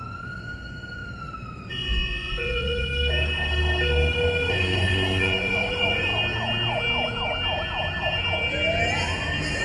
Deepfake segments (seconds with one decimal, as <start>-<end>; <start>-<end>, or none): 0.0-1.0; 1.7-2.9; 4.5-6.1